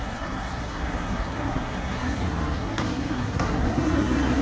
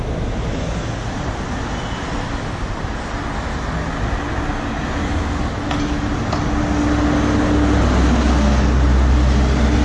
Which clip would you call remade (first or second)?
first